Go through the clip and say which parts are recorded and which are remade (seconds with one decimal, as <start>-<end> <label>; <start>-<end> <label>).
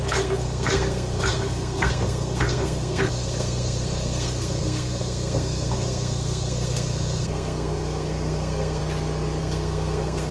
0.0-8.8 remade; 8.8-9.4 recorded; 9.4-10.3 remade